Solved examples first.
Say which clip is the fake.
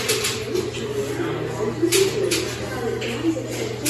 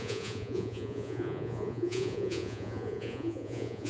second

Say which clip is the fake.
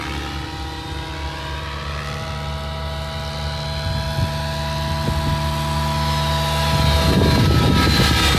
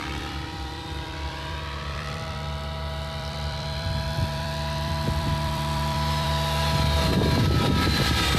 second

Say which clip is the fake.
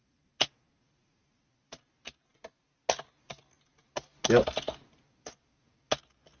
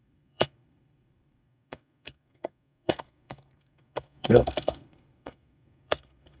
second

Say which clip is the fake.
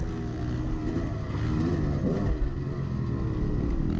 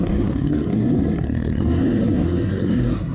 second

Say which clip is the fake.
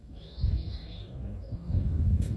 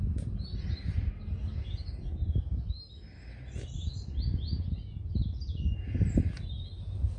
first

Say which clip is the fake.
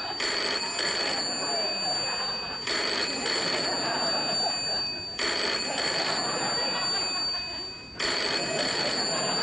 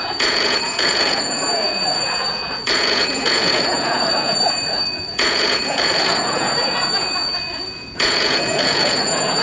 second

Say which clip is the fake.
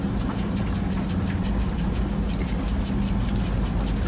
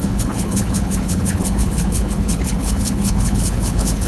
second